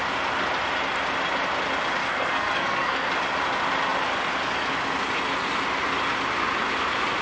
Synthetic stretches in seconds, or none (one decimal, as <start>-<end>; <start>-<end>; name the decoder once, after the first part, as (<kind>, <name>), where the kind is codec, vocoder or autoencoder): 2.0-3.1 (codec, SNAC)